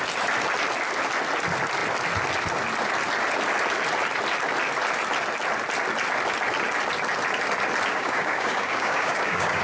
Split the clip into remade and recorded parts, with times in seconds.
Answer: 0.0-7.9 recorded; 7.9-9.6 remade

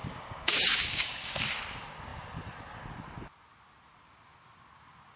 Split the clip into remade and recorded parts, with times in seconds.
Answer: 0.0-1.4 remade; 1.4-5.2 recorded

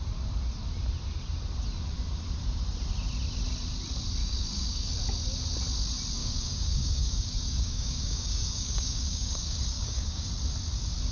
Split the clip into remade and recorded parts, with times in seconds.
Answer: 0.0-4.2 recorded; 4.2-4.9 remade; 4.9-6.2 recorded; 6.2-10.3 remade; 10.3-11.1 recorded

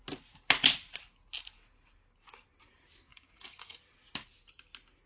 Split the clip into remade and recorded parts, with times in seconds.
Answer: 0.0-3.1 recorded; 3.1-3.8 remade; 3.8-5.1 recorded

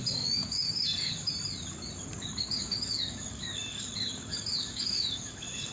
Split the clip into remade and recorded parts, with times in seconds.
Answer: 0.0-1.3 remade; 1.3-2.1 recorded; 2.1-5.7 remade

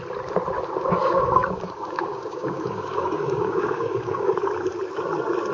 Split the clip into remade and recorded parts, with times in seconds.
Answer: 0.0-1.0 recorded; 1.0-4.3 remade; 4.3-5.5 recorded

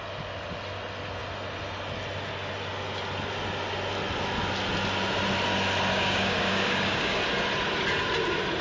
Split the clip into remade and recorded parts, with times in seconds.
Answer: 0.0-5.9 recorded; 5.9-7.2 remade; 7.2-8.6 recorded

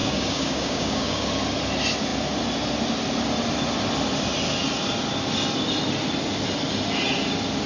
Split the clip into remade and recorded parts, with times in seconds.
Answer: 0.0-1.3 remade; 1.3-7.7 recorded